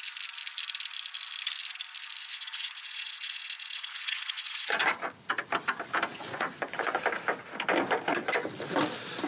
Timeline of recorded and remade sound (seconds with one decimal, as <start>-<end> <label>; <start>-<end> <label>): 0.0-2.2 recorded; 2.2-5.0 remade; 5.0-6.1 recorded; 6.1-7.0 remade; 7.0-9.3 recorded